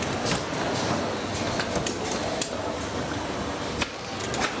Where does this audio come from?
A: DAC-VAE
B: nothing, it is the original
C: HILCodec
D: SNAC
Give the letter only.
B